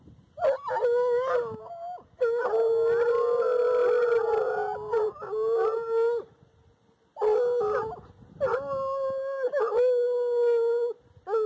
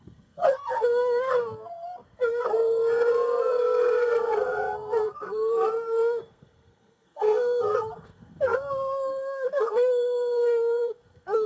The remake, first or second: second